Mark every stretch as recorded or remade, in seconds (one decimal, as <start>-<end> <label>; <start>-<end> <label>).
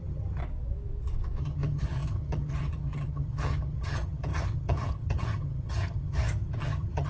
0.0-0.4 remade; 0.4-1.4 recorded; 1.4-7.1 remade